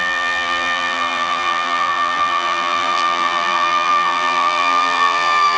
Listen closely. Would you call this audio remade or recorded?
remade